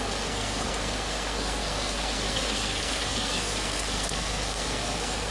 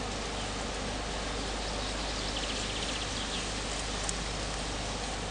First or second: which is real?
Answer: second